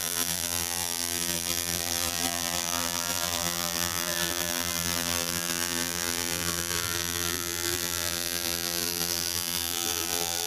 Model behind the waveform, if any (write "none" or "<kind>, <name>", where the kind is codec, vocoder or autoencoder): vocoder, BigVGAN v2